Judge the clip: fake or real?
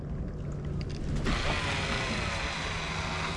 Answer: real